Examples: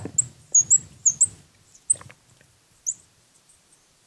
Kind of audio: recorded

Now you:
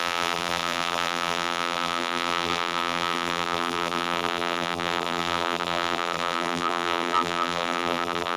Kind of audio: remade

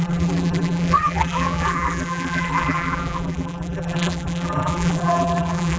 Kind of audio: remade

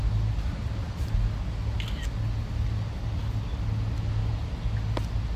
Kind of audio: recorded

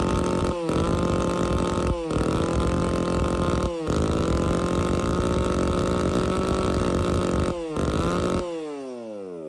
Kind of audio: recorded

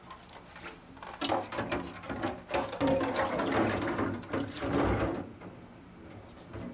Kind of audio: recorded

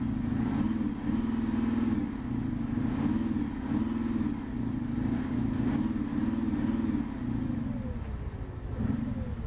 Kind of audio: recorded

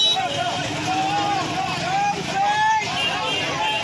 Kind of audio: recorded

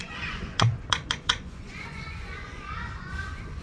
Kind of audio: remade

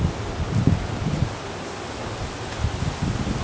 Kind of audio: recorded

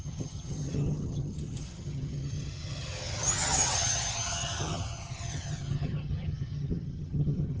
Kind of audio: remade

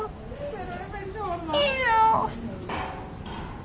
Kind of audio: recorded